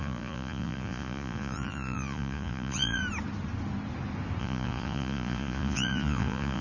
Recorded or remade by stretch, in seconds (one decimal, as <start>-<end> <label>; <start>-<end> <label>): 0.0-3.0 remade; 3.0-4.4 recorded; 4.4-6.6 remade